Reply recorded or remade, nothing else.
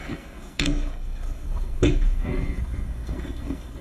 remade